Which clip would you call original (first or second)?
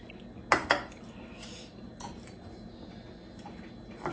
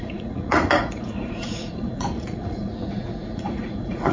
first